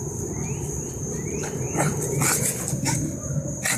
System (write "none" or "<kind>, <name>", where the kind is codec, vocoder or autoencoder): none